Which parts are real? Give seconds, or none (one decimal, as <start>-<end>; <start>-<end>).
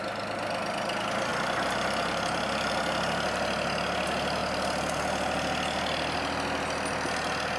0.0-1.3; 2.7-4.4; 5.0-7.6